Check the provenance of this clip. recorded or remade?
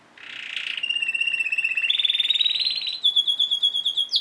recorded